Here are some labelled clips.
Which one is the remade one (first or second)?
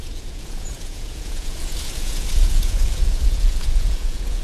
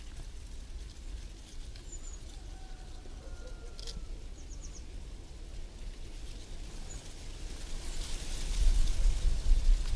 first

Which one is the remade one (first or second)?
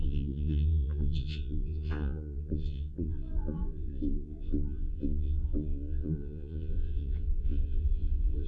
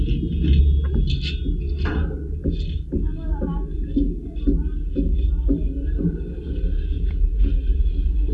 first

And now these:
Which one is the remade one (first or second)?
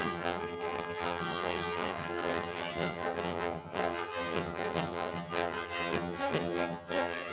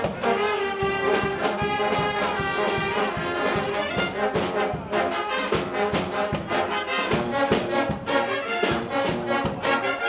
first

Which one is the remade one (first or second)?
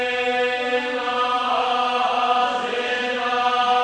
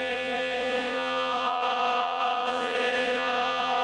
second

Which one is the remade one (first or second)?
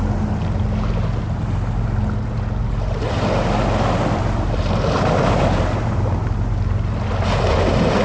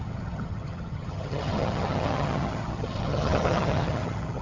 second